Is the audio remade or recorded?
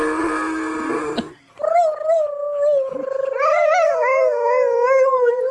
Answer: recorded